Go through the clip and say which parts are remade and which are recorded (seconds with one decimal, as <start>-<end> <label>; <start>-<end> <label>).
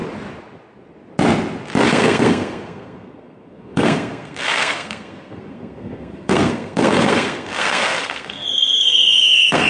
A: 0.0-1.9 recorded; 1.9-9.7 remade